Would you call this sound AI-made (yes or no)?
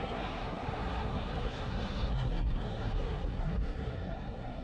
yes